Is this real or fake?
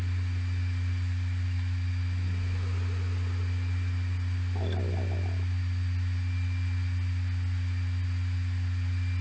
real